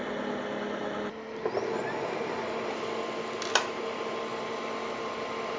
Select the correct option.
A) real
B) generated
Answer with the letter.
A